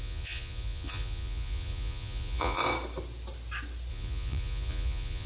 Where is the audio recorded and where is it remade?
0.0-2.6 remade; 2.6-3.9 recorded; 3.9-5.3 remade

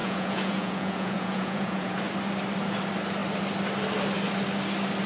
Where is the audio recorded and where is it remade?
0.0-2.0 remade; 2.0-5.1 recorded

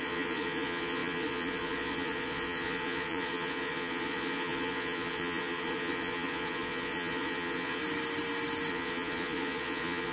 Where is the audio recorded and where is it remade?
0.0-7.8 remade; 7.8-8.7 recorded; 8.7-10.1 remade

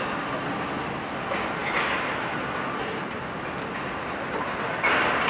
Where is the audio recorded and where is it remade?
0.0-5.3 recorded